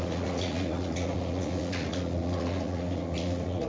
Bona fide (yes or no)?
no